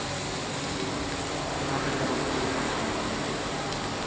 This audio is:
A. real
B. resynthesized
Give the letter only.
A